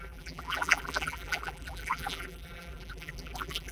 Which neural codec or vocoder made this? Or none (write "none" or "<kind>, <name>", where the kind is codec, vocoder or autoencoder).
vocoder, BigVGAN v2